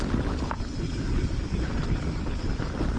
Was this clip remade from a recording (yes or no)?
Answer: no